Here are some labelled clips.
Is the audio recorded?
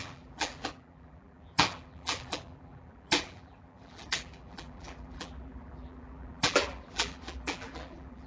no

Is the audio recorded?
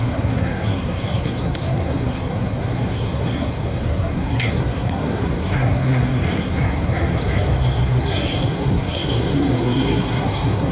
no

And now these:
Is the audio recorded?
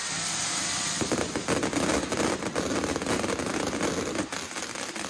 yes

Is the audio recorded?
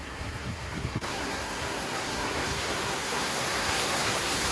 no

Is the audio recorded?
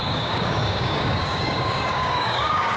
no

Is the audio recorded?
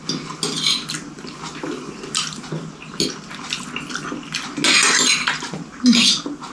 yes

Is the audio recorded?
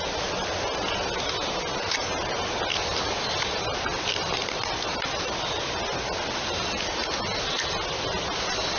yes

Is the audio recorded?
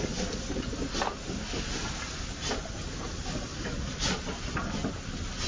yes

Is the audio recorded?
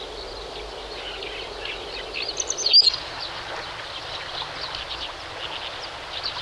yes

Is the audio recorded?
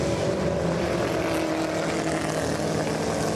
yes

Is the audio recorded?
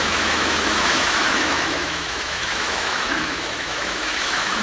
no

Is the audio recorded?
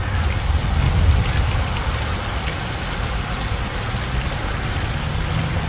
yes